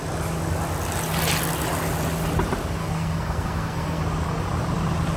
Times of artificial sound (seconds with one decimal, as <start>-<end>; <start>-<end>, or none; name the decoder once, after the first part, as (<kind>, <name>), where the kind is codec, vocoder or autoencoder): 2.8-4.0 (codec, SNAC)